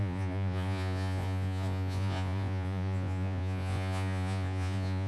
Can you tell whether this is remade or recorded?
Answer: remade